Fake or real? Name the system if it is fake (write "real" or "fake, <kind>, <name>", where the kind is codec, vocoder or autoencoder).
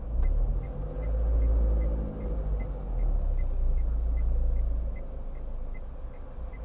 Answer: real